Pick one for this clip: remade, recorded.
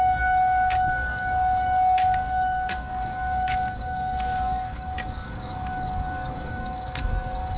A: remade